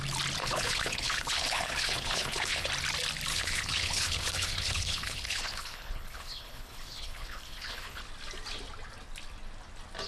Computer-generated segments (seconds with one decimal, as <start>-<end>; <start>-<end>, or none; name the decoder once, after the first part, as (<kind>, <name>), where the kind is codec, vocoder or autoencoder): 0.4-2.7 (codec, HILCodec); 3.3-8.0